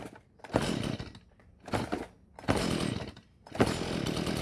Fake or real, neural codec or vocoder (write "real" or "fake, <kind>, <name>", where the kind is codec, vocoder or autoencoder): real